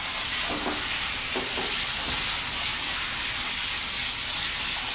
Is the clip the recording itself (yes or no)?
yes